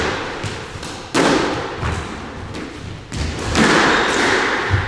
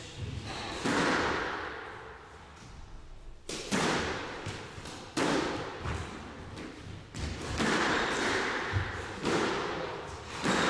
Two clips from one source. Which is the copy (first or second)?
second